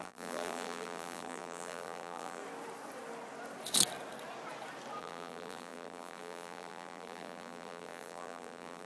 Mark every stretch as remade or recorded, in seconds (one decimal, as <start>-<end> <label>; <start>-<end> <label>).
0.0-2.4 remade; 2.4-5.0 recorded; 5.0-8.8 remade